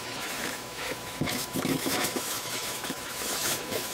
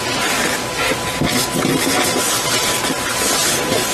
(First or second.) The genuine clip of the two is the second